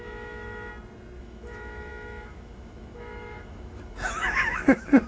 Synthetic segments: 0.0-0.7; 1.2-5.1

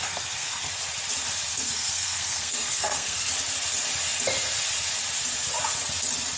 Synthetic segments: 0.0-0.7; 1.5-3.3

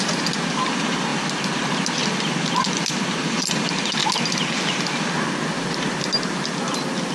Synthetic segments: none

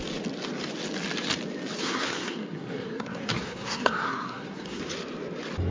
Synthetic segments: 1.8-4.8